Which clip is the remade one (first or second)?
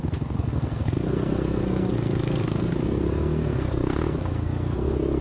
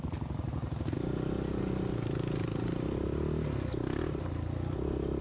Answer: first